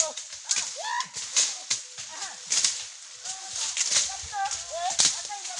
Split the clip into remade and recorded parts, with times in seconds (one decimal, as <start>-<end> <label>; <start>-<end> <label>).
0.0-5.6 recorded